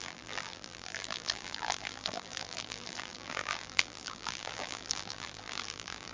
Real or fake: fake